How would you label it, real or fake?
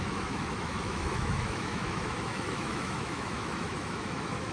fake